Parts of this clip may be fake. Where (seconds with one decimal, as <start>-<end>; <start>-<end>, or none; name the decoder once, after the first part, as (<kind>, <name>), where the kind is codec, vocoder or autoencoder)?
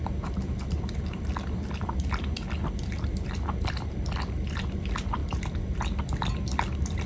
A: 0.0-7.1 (vocoder, BigVGAN v2)